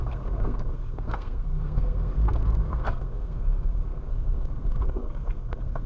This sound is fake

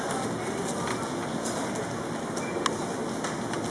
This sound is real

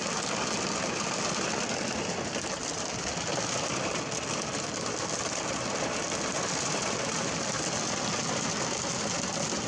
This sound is real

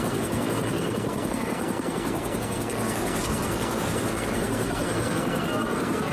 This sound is fake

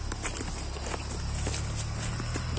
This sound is real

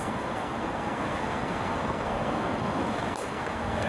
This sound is fake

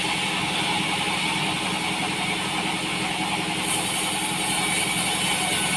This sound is real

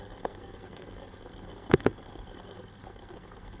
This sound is fake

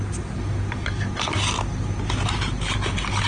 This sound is real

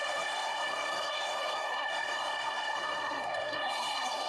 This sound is fake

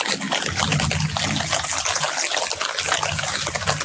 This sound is real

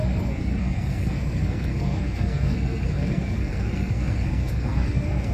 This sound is fake